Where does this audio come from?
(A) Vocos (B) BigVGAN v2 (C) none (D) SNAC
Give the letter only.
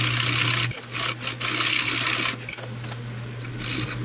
C